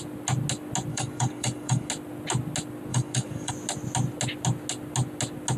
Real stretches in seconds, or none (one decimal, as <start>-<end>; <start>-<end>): 0.0-0.9; 1.9-2.9; 3.5-5.6